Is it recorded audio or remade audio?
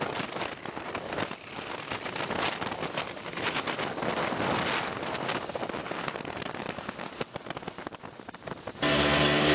recorded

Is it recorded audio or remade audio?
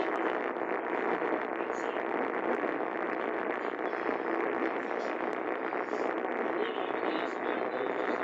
recorded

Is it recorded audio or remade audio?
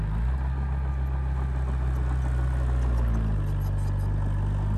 recorded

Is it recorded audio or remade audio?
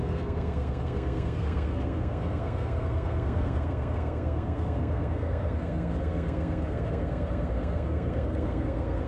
remade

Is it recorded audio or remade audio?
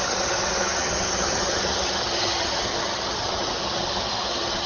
remade